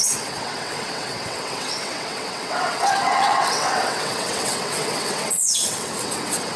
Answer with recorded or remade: remade